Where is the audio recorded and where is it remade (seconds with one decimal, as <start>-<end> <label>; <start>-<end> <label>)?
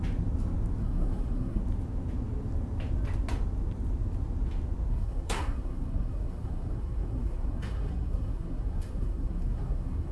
0.0-0.8 recorded; 0.8-1.6 remade; 1.6-4.9 recorded; 4.9-10.1 remade